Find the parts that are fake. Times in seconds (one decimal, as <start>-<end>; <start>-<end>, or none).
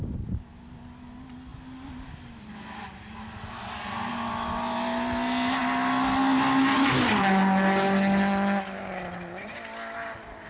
none